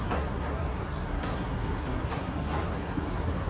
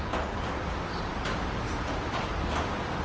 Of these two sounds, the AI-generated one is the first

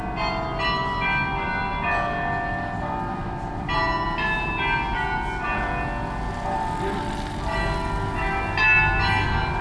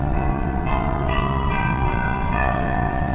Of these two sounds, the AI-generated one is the second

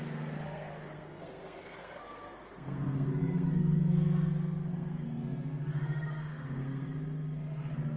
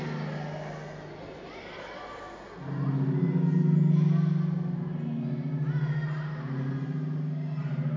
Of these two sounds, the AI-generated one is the first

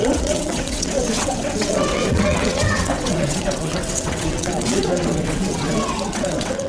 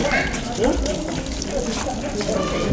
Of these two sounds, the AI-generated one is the first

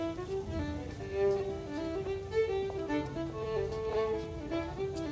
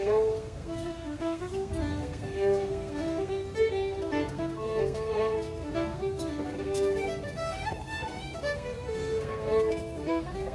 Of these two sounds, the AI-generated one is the second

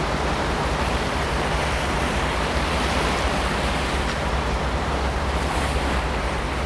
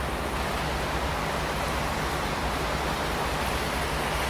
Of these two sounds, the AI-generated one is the first